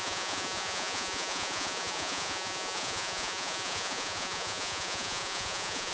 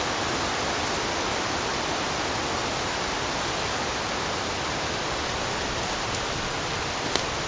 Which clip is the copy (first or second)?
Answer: first